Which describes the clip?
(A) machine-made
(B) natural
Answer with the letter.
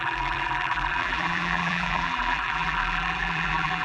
A